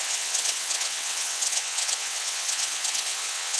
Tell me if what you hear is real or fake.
fake